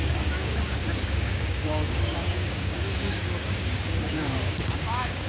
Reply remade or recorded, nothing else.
remade